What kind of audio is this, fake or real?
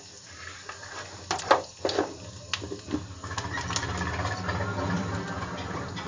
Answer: real